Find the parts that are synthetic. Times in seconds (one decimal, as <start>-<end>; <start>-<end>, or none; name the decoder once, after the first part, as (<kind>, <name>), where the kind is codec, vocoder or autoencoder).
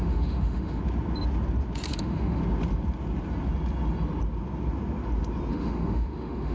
0.0-0.8 (autoencoder, DAC-VAE); 1.9-2.4; 5.5-6.5